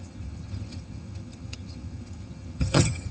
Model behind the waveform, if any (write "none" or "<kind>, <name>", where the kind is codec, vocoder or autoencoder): vocoder, HiFi-GAN